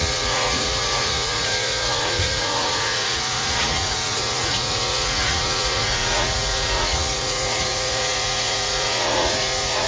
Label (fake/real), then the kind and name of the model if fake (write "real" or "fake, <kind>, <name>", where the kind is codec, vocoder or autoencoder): fake, vocoder, Vocos